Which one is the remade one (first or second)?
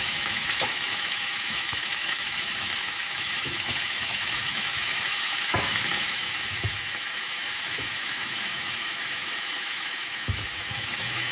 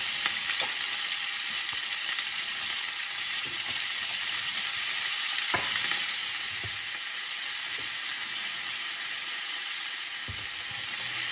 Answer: first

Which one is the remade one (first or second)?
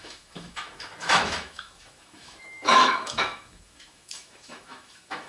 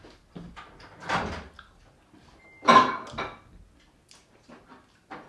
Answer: first